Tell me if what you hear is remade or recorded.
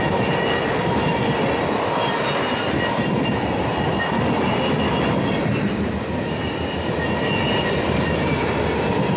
recorded